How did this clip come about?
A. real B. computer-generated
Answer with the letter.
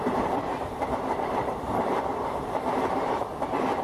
B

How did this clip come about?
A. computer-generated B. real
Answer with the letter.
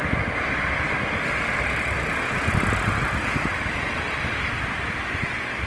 B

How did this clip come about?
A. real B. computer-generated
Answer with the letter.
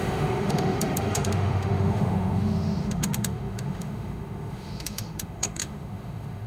B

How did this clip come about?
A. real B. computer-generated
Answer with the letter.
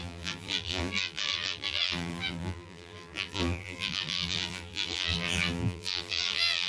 B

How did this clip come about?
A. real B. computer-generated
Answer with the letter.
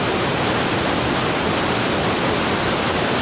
A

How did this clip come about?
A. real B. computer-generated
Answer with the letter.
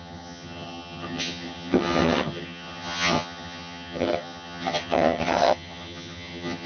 B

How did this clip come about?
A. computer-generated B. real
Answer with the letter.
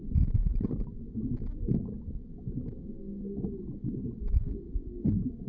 B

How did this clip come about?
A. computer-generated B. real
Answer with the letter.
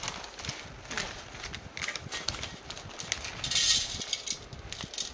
B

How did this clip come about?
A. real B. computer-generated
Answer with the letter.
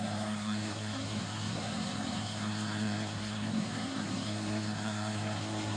B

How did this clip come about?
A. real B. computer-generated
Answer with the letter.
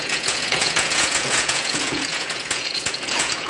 B